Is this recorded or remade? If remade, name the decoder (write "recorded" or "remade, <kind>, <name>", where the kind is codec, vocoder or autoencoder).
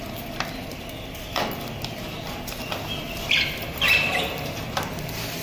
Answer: remade, vocoder, BigVGAN v2